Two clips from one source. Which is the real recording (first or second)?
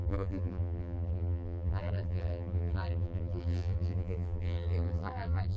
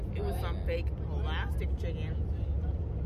second